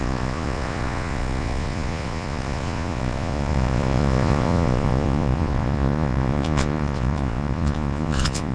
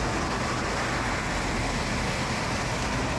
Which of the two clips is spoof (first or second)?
first